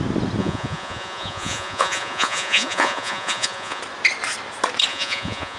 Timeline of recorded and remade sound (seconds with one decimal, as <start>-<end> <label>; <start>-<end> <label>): 0.0-0.4 recorded; 0.4-3.8 remade; 3.8-4.9 recorded; 4.9-5.6 remade